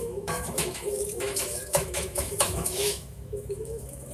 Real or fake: fake